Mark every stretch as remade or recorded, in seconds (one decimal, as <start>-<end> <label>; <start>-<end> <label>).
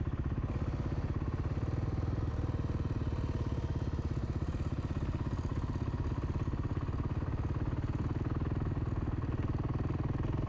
0.0-10.5 recorded